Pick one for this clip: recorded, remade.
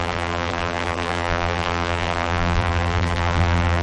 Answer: remade